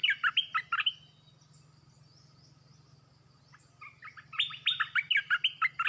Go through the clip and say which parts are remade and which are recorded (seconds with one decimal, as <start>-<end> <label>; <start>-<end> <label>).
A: 0.0-5.9 recorded